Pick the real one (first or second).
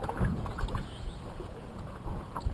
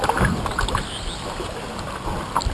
second